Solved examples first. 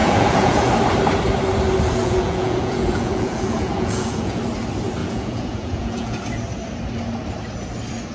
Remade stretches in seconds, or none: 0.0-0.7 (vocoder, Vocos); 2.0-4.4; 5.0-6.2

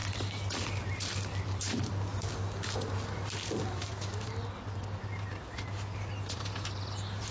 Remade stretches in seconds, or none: none

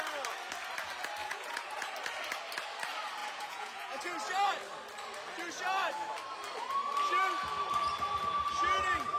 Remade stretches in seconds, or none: 1.2-1.9 (vocoder, Vocos); 3.2-4.0

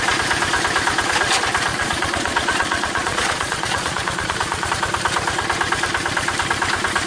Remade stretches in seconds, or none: 1.7-4.7 (vocoder, Vocos)

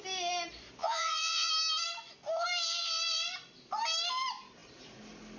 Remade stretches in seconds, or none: 0.8-1.5 (vocoder, Vocos)

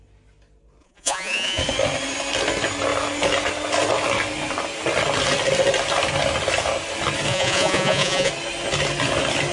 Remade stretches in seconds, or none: 0.8-1.6 (vocoder, Vocos); 7.3-8.3

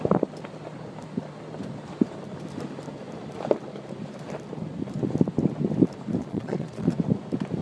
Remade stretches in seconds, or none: 6.2-6.9 (vocoder, Vocos)